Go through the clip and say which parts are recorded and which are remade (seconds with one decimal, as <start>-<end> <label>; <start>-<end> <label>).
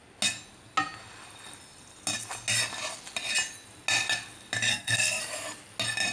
0.0-4.7 recorded; 4.7-5.2 remade; 5.2-6.1 recorded